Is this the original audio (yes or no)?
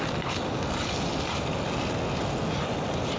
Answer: yes